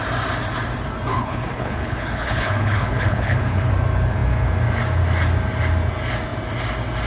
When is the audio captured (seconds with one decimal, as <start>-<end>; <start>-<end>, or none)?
0.0-1.1; 3.7-7.1

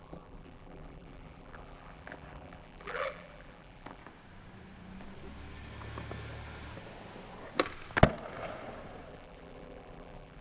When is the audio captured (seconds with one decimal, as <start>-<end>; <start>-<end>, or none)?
4.0-9.1